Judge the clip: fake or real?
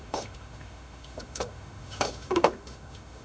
fake